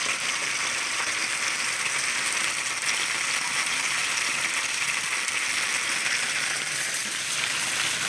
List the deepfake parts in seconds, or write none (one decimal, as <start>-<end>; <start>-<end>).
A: 0.4-1.2; 4.0-5.0; 7.0-8.1